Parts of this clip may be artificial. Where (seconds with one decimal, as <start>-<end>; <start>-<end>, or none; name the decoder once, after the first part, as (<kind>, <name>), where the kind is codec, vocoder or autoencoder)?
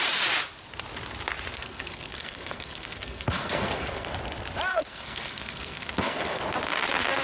1.5-4.1 (codec, SNAC); 4.7-6.4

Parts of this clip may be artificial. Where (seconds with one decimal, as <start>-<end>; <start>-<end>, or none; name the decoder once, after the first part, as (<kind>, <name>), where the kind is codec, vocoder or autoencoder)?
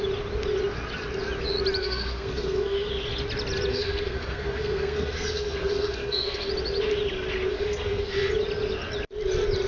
1.8-2.9 (codec, SNAC); 3.7-6.5; 7.5-8.3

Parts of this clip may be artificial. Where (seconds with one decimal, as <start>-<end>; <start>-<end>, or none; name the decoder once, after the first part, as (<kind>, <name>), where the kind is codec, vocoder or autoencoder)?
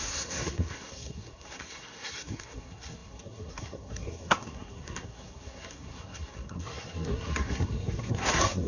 0.0-8.7 (codec, SNAC)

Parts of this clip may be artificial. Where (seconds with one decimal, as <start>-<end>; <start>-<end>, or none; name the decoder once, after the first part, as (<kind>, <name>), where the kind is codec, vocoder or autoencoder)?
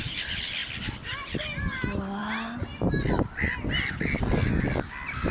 none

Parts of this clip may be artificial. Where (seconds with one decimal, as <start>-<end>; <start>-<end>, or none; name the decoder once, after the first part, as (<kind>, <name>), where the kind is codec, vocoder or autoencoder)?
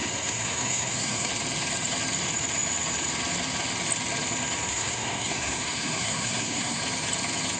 0.0-1.3 (codec, SNAC); 4.7-6.8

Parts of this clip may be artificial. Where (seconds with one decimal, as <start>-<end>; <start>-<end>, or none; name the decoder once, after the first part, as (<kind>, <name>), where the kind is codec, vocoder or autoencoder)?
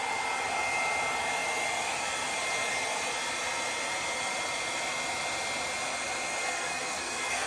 6.4-7.5 (codec, SNAC)